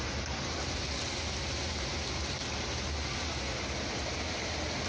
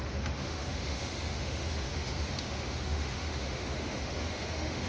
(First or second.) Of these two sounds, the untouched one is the first